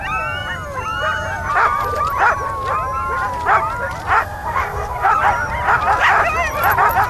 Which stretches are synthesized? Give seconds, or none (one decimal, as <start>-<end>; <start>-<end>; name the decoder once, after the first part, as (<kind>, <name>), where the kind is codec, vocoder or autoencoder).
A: 4.2-5.1 (codec, SNAC)